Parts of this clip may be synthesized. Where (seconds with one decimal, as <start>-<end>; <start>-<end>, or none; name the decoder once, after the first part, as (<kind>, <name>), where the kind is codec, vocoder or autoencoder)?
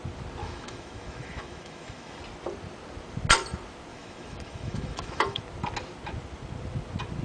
0.4-2.2 (autoencoder, DAC-VAE); 3.9-5.4